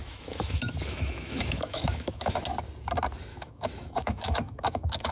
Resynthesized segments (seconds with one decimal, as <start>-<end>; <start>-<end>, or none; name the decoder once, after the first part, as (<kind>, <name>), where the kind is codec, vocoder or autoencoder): 0.0-2.4 (autoencoder, DAC-VAE); 3.3-5.1